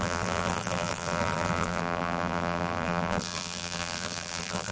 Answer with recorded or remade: remade